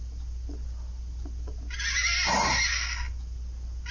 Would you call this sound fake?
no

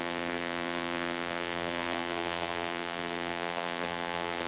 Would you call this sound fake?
yes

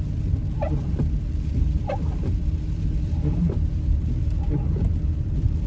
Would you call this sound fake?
yes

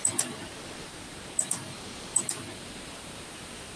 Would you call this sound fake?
yes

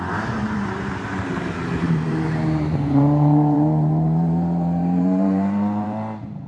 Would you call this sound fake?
yes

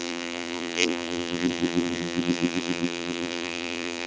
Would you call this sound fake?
yes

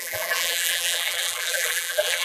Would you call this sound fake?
yes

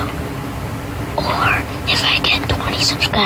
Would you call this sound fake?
no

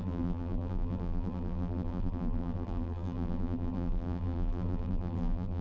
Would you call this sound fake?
yes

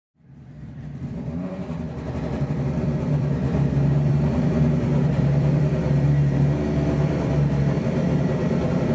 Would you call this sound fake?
yes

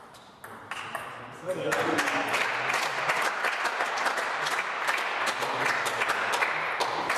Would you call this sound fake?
no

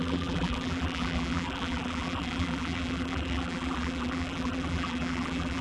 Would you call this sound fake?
yes